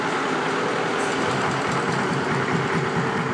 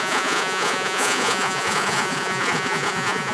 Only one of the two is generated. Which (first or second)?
second